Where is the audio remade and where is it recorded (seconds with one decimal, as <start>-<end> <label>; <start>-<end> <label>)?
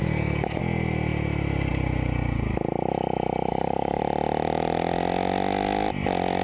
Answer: 0.0-0.6 remade; 0.6-3.5 recorded; 3.5-4.0 remade; 4.0-6.4 recorded